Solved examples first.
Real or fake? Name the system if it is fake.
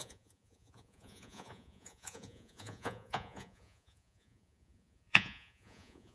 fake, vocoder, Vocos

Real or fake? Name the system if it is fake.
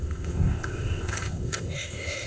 fake, codec, ZipCodec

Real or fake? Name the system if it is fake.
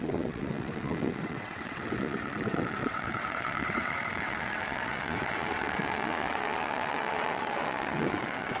fake, vocoder, WaveNeXt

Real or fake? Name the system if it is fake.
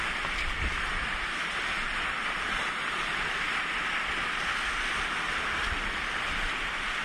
real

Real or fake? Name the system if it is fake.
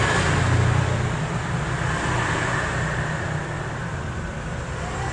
real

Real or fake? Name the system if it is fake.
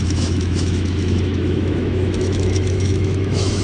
fake, autoencoder, DAC-VAE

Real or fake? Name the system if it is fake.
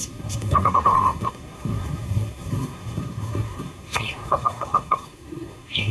fake, codec, SNAC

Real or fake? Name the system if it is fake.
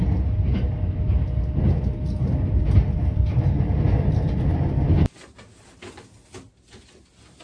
real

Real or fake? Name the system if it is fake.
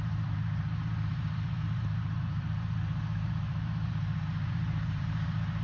fake, vocoder, BigVGAN v2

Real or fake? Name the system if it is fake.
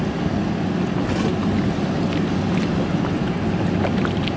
real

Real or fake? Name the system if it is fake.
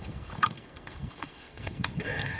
fake, codec, SNAC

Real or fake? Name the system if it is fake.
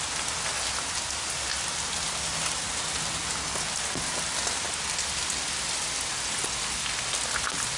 real